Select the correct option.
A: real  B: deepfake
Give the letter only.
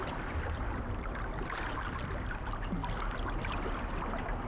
A